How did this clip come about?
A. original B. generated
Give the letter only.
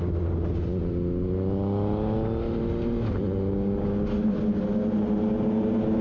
A